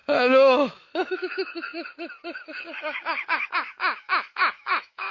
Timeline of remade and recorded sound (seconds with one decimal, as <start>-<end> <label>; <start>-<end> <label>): 0.0-1.7 remade; 1.7-3.5 recorded; 3.5-5.1 remade